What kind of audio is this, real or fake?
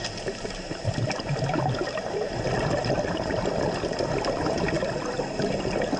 real